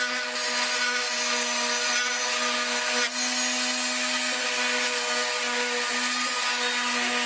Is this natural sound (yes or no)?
yes